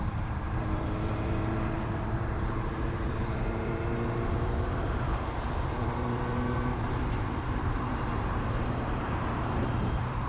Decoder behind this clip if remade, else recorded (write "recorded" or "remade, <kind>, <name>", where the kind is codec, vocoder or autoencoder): remade, vocoder, BigVGAN v2